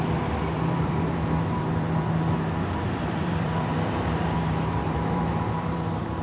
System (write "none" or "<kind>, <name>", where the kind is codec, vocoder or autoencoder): vocoder, BigVGAN v2